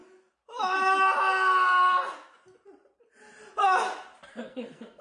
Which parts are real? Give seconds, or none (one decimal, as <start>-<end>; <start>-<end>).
0.0-4.3